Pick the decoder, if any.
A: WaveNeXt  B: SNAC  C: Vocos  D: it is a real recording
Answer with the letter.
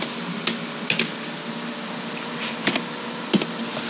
D